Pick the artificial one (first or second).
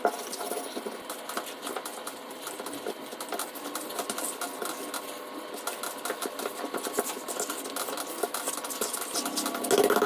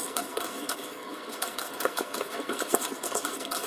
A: second